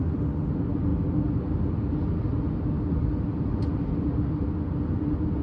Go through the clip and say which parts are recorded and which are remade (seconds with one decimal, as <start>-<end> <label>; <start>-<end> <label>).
0.0-5.4 recorded